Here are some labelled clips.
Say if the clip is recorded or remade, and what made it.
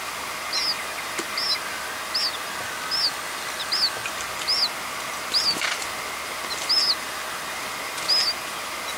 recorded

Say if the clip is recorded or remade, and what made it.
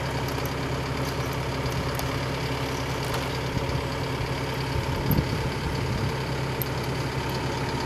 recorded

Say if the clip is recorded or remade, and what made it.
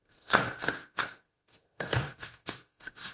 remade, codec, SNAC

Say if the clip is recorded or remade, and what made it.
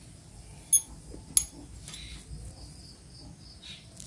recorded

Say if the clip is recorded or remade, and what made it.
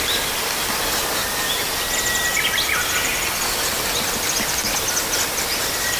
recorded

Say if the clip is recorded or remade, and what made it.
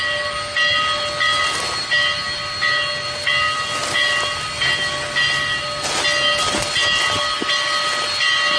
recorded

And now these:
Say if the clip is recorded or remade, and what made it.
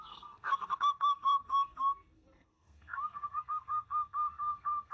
remade, codec, SNAC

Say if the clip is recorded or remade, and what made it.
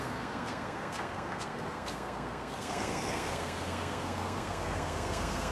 remade, codec, SNAC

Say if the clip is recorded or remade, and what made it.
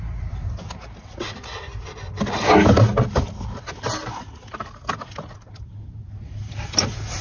recorded